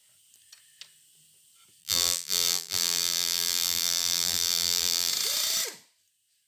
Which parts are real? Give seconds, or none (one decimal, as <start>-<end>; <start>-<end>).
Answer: 0.0-1.8; 5.1-6.5